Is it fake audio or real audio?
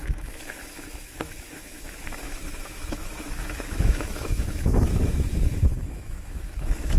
fake